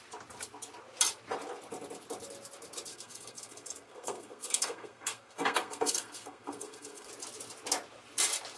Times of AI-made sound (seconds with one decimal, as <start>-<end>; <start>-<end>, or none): 2.9-7.1